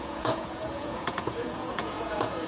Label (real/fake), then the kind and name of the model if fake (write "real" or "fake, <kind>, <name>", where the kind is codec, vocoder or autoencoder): fake, vocoder, Vocos